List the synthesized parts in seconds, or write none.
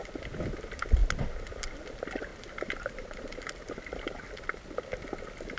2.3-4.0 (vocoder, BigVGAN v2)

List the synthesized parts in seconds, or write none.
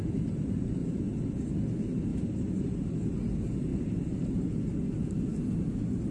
2.1-3.1 (vocoder, BigVGAN v2); 3.7-4.5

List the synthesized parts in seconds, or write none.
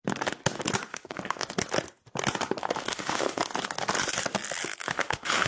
0.9-1.5 (autoencoder, DAC-VAE); 2.6-3.4; 4.8-5.5